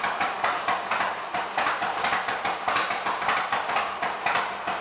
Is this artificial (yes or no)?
no